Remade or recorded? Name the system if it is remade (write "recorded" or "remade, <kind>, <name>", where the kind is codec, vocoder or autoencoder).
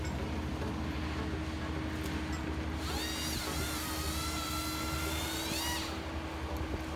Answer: recorded